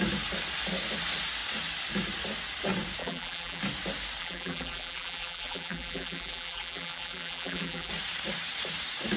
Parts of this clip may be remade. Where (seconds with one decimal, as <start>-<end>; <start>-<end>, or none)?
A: 3.0-3.6; 4.2-7.9